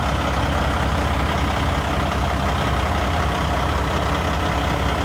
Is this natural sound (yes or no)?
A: yes